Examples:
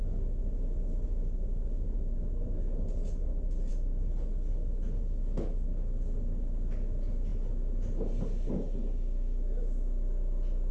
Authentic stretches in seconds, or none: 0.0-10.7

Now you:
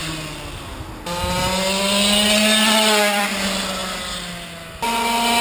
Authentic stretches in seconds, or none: 0.0-5.4

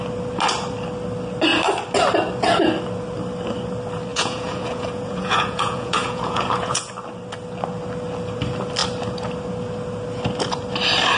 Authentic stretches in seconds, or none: 0.0-4.1; 6.9-11.2

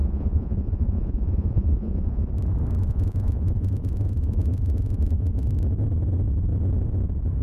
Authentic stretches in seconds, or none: 2.3-2.8; 5.5-7.4

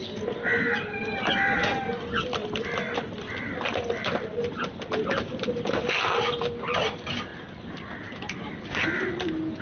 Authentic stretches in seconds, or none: 0.0-9.6

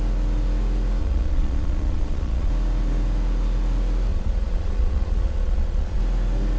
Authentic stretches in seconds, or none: 0.0-1.0; 2.5-4.1; 6.0-6.6